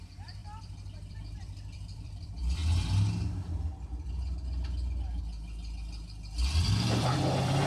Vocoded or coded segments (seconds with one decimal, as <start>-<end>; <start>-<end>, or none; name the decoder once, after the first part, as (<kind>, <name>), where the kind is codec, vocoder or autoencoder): 0.0-2.6 (vocoder, BigVGAN v2); 7.0-7.7